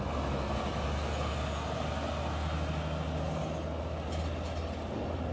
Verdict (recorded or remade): recorded